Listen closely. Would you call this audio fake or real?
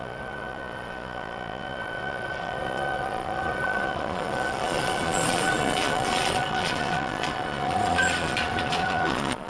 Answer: fake